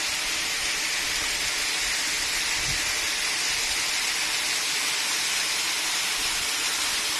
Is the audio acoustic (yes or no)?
yes